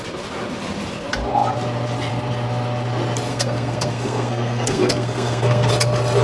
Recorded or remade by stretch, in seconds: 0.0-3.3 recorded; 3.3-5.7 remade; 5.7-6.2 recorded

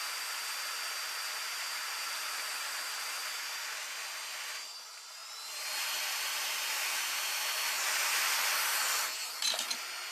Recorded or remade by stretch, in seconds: 0.0-10.1 recorded

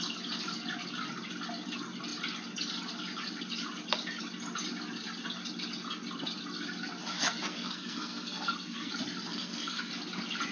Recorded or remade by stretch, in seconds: 0.0-7.0 recorded; 7.0-8.9 remade; 8.9-9.3 recorded; 9.3-9.9 remade; 9.9-10.5 recorded

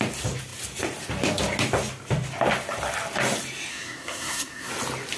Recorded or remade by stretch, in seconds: 0.0-3.7 recorded; 3.7-4.7 remade; 4.7-5.2 recorded

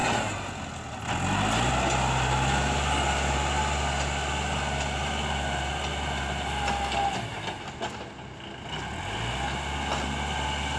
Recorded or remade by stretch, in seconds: 0.0-10.8 recorded

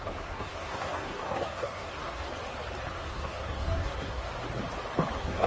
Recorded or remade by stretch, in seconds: 0.0-2.3 remade; 2.3-2.9 recorded; 2.9-4.3 remade; 4.3-5.1 recorded; 5.1-5.5 remade

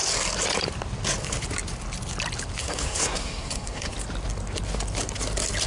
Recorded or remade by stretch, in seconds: 0.0-2.6 recorded; 2.6-3.9 remade; 3.9-5.7 recorded

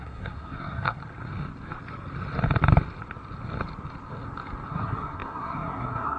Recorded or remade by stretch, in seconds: 0.0-1.0 remade; 1.0-4.7 recorded; 4.7-6.2 remade